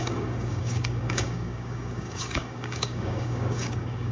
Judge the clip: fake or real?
fake